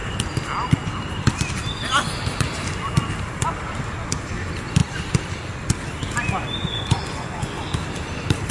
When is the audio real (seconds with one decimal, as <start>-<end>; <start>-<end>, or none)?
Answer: 0.0-6.6; 7.6-8.5